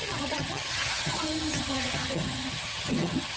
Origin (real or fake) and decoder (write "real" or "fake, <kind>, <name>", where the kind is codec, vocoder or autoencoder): fake, vocoder, HiFi-GAN